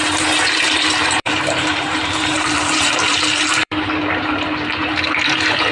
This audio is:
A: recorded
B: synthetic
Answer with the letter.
B